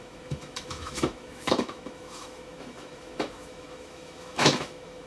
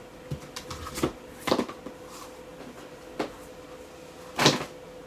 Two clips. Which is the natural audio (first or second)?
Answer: second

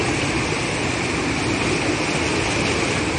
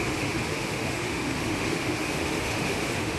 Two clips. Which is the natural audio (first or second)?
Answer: first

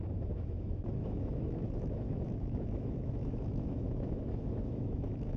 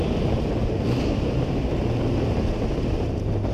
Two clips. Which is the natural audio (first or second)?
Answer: second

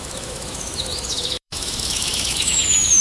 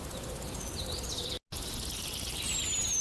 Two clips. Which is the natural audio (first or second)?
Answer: second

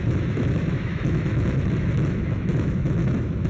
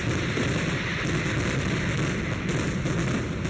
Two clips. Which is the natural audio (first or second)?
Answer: second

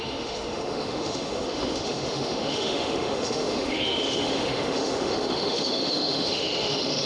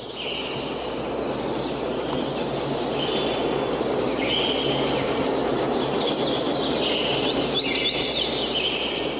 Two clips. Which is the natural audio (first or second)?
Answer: second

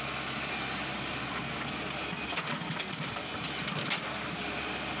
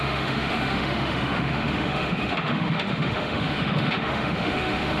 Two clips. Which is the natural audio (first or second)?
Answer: first